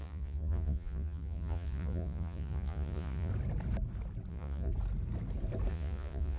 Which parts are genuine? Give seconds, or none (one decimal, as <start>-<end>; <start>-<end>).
3.3-4.3; 4.7-5.7